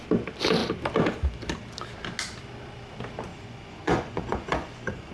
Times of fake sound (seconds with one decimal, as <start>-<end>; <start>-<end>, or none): 3.3-5.1